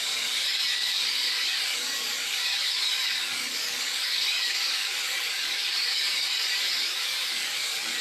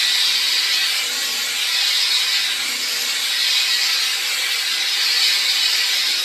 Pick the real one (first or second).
second